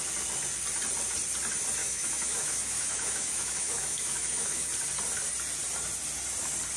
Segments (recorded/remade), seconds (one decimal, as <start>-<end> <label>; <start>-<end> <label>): 0.0-1.8 recorded; 1.8-4.7 remade; 4.7-6.8 recorded